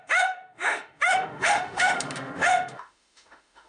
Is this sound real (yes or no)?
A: no